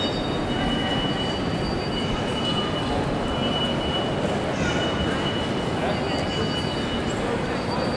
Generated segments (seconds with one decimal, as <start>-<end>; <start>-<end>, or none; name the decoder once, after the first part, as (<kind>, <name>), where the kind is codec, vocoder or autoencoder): none